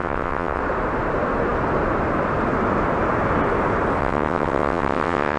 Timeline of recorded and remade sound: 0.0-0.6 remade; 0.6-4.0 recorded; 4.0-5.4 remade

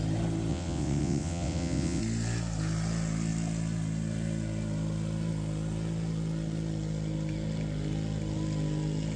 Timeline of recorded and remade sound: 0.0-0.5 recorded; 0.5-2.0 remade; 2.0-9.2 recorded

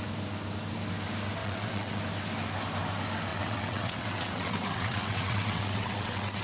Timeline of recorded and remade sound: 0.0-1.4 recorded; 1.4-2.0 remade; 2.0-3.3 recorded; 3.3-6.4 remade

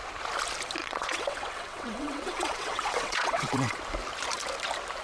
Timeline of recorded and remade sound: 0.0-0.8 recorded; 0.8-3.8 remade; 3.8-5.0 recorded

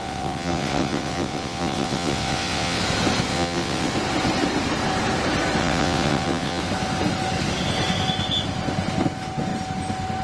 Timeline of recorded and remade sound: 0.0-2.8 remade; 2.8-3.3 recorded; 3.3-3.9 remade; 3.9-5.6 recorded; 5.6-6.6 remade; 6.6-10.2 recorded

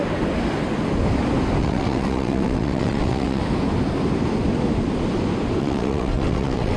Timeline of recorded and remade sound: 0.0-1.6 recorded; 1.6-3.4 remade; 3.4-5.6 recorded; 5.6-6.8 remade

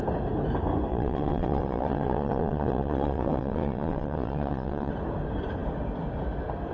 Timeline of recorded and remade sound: 0.0-0.9 recorded; 0.9-4.9 remade; 4.9-6.7 recorded

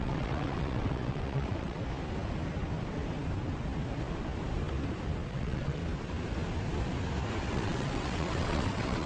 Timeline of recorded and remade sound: 0.0-1.8 remade; 1.8-5.3 recorded; 5.3-5.8 remade; 5.8-7.5 recorded; 7.5-9.1 remade